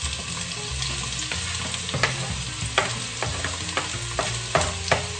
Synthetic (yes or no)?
no